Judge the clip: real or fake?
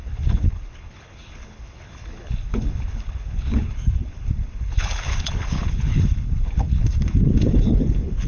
fake